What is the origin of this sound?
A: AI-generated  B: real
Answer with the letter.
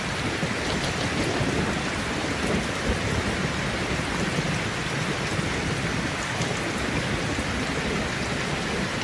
B